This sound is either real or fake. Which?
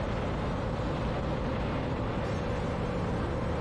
real